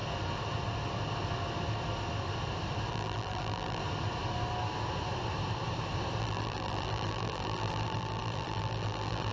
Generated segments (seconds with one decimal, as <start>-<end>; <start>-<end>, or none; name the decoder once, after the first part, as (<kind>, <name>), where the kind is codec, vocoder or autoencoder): 2.9-3.8 (vocoder, BigVGAN v2); 6.2-9.3